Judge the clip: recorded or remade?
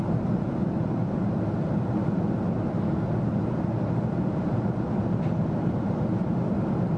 recorded